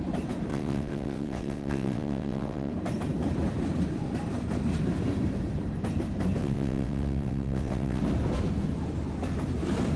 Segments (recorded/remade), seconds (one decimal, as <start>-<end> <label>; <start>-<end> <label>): 0.0-0.5 recorded; 0.5-2.7 remade; 2.7-6.4 recorded; 6.4-8.0 remade; 8.0-10.0 recorded